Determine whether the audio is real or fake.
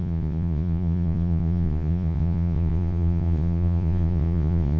fake